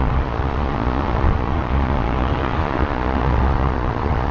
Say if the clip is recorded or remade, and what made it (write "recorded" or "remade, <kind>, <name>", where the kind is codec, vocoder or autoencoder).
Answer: remade, vocoder, Vocos